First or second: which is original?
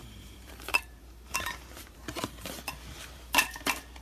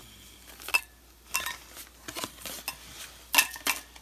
second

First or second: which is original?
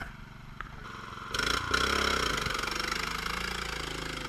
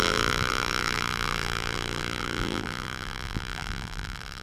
first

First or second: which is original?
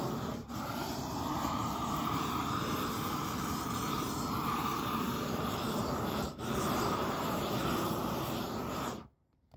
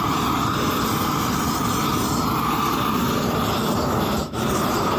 second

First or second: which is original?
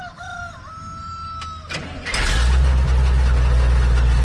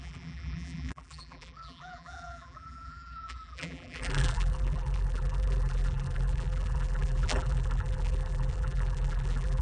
first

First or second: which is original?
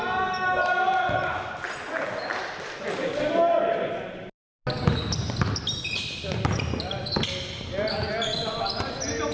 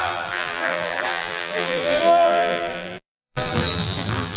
first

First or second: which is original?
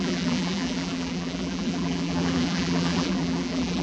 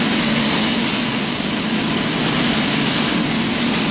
second